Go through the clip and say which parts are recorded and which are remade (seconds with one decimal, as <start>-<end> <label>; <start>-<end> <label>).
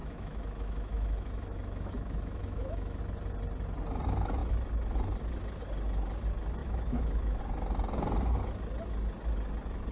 0.0-3.0 remade; 3.0-6.6 recorded; 6.6-7.4 remade; 7.4-9.9 recorded